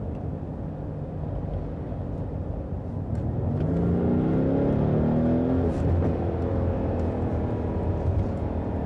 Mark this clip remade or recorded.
recorded